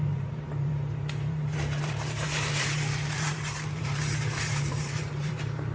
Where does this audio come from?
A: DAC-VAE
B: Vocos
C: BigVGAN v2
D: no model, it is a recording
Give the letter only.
C